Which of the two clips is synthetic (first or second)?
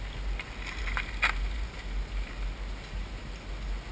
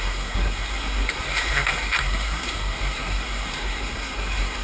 second